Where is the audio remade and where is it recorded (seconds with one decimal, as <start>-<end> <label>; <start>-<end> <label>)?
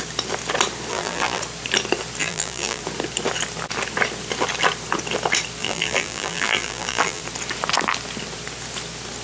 0.0-0.9 recorded; 0.9-1.4 remade; 1.4-2.2 recorded; 2.2-2.8 remade; 2.8-5.6 recorded; 5.6-7.2 remade; 7.2-9.2 recorded